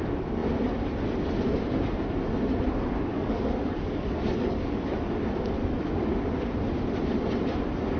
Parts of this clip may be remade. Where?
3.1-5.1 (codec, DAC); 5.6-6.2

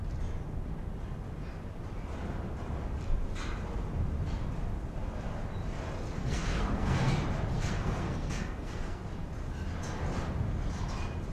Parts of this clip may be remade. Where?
6.2-7.1 (codec, SNAC); 7.5-9.0

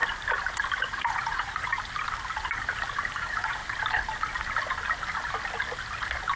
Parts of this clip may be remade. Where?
0.8-1.7 (vocoder, Vocos); 3.2-3.6

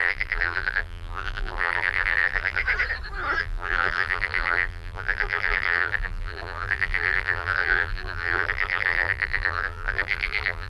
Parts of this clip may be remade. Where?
0.0-2.6 (vocoder, BigVGAN v2); 3.4-10.7

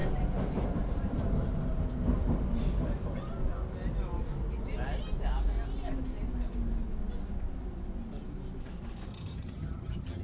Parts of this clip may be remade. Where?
9.1-10.2 (vocoder, HiFi-GAN)

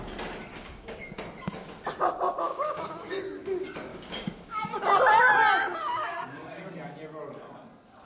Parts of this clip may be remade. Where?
0.5-1.2 (codec, DAC); 2.5-3.2; 3.9-4.7; 5.6-6.7